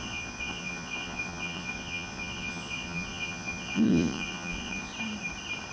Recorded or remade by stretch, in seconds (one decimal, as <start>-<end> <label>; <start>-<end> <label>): 0.0-4.9 remade; 4.9-5.7 recorded